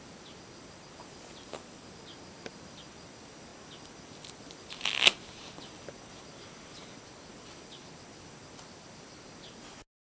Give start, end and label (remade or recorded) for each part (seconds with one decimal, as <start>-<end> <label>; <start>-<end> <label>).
0.0-10.1 recorded